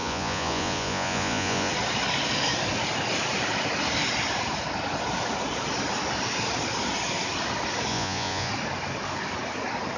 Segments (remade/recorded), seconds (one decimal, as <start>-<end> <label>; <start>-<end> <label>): 0.0-1.7 remade; 1.7-7.9 recorded; 7.9-8.5 remade; 8.5-10.0 recorded